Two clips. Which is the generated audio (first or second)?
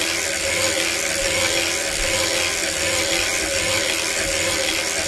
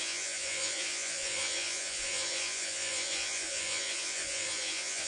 second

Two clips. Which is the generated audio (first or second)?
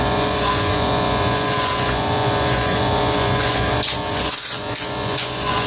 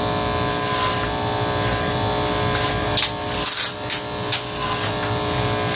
first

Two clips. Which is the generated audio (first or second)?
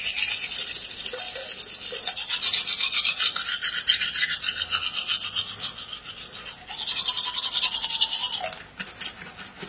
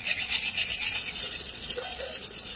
second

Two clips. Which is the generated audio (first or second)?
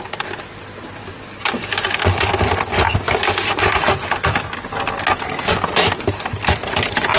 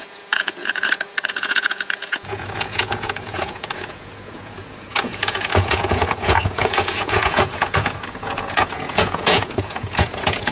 second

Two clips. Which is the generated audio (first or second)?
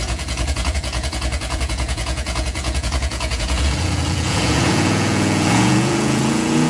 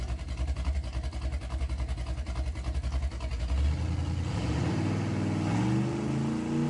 first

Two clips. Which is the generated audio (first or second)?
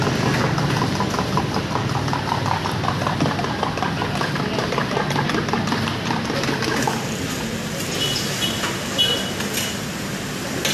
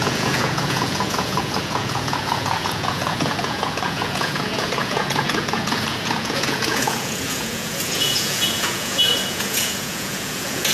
second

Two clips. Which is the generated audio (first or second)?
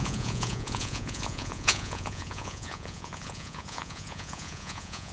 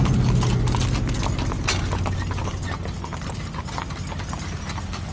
first